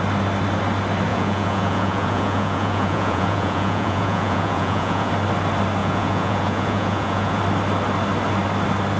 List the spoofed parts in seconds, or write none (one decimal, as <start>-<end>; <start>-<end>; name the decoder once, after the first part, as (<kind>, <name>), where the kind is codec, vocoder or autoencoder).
1.1-5.1 (vocoder, Vocos); 5.8-7.4